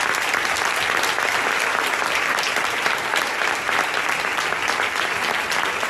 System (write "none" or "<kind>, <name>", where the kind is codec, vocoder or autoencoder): vocoder, BigVGAN v2